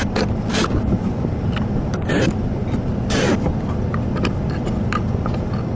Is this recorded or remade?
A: recorded